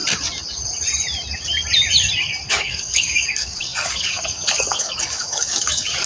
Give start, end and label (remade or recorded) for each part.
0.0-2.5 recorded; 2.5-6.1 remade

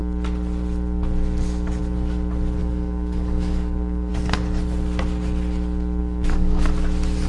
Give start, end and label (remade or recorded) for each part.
0.0-2.6 recorded; 2.6-4.1 remade; 4.1-6.0 recorded; 6.0-6.7 remade; 6.7-7.3 recorded

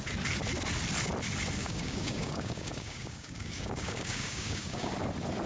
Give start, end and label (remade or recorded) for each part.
0.0-1.6 recorded; 1.6-4.9 remade; 4.9-5.5 recorded

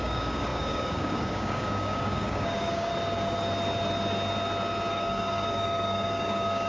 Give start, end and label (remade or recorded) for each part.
0.0-2.9 remade; 2.9-4.9 recorded; 4.9-6.7 remade

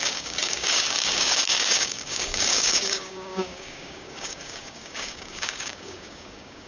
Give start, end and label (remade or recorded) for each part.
0.0-6.7 remade

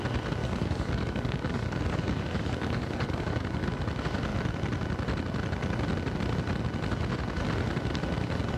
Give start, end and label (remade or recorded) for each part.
0.0-0.4 recorded; 0.4-3.8 remade; 3.8-8.6 recorded

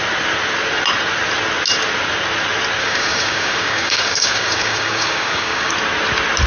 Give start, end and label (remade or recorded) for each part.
0.0-2.8 recorded; 2.8-5.7 remade; 5.7-6.5 recorded

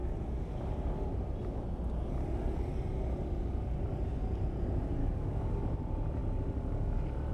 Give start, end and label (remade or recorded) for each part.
0.0-5.0 recorded; 5.0-5.6 remade; 5.6-7.3 recorded